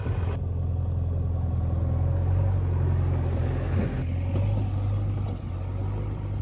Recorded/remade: recorded